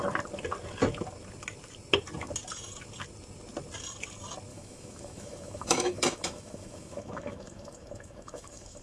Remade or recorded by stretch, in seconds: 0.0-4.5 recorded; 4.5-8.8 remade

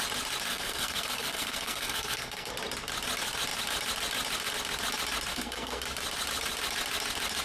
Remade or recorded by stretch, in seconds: 0.0-0.5 recorded; 0.5-2.5 remade; 2.5-5.3 recorded; 5.3-5.8 remade; 5.8-7.4 recorded

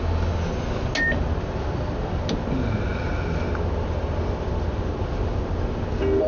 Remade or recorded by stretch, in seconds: 0.0-6.3 recorded

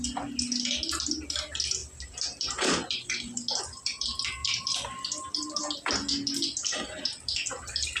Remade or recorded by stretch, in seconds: 0.0-4.4 recorded; 4.4-5.6 remade; 5.6-8.0 recorded

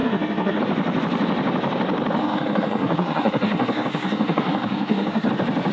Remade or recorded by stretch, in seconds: 0.0-0.6 remade; 0.6-2.2 recorded; 2.2-5.3 remade; 5.3-5.7 recorded

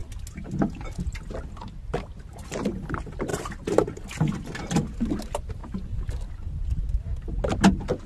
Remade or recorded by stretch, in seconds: 0.0-8.1 recorded

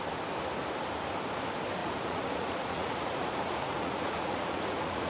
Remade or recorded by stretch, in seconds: 0.0-1.8 recorded; 1.8-5.1 remade

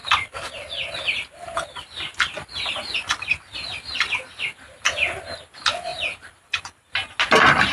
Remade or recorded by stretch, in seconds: 0.0-0.7 remade; 0.7-2.1 recorded; 2.1-4.8 remade; 4.8-5.9 recorded; 5.9-6.9 remade; 6.9-7.7 recorded